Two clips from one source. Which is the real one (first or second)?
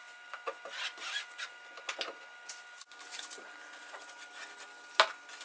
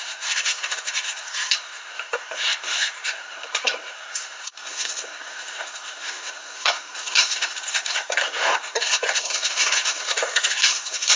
first